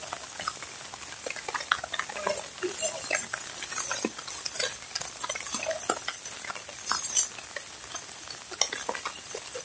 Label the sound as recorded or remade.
recorded